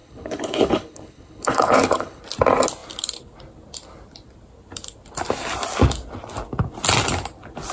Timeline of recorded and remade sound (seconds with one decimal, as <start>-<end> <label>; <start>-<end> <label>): 0.0-2.2 remade; 2.2-7.7 recorded